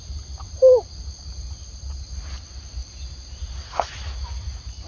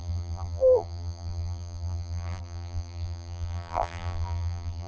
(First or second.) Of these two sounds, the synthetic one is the second